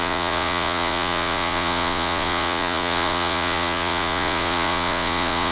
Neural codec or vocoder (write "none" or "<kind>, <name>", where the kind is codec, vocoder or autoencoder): vocoder, Vocos